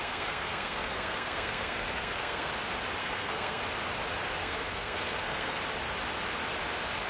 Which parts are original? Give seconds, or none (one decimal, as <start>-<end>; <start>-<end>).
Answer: 2.5-3.0; 3.6-4.4; 5.6-7.1